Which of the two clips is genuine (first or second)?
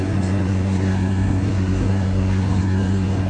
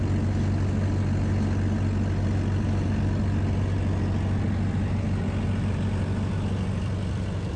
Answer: second